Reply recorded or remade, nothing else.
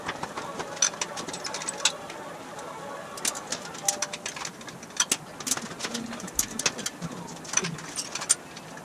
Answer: recorded